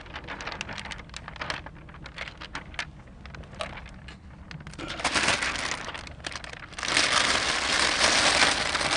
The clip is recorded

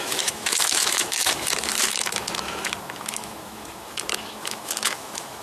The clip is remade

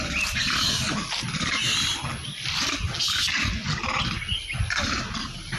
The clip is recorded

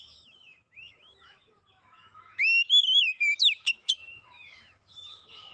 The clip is remade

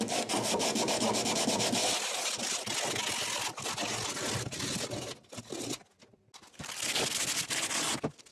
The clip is recorded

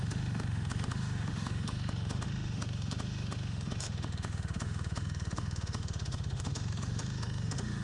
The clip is remade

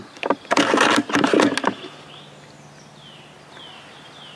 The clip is recorded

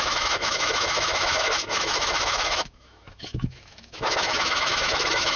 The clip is remade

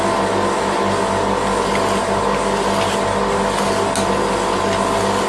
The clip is recorded